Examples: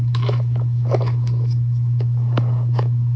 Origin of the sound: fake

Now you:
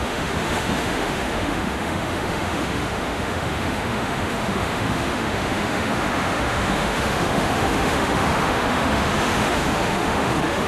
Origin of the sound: fake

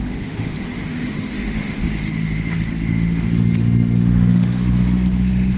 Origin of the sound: fake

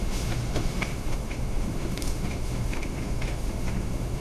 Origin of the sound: fake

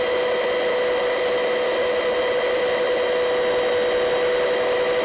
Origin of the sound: real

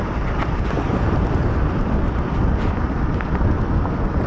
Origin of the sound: real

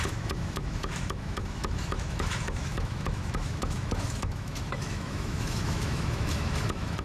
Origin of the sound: fake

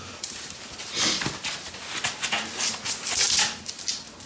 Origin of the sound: real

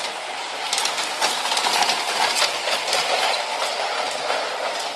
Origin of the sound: real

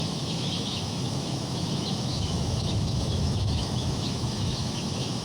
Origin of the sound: fake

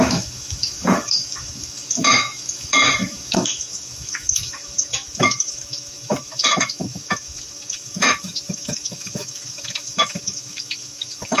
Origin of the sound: fake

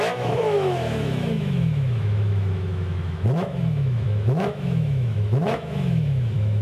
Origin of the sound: fake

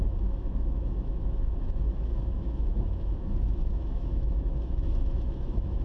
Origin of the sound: fake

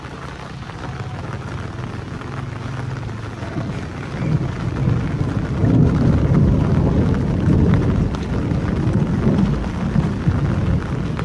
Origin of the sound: real